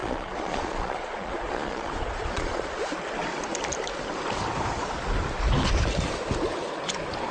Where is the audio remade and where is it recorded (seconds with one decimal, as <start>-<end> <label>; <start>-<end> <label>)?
0.0-2.8 remade; 2.8-7.3 recorded